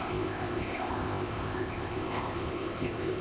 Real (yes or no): no